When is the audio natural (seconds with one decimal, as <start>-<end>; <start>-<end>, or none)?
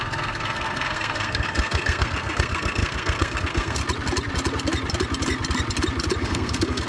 3.8-6.2